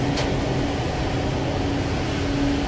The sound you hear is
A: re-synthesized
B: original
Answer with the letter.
B